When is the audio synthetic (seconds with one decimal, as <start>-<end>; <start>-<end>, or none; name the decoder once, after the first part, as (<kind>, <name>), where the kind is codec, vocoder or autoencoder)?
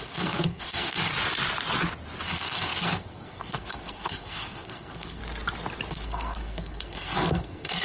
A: 0.0-1.1 (codec, SNAC); 2.2-5.2; 5.9-7.8